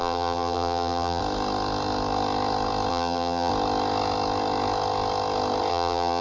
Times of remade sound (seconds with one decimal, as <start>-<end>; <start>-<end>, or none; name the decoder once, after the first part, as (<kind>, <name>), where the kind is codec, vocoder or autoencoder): 0.0-1.2 (vocoder, BigVGAN v2); 2.9-3.5; 5.7-6.2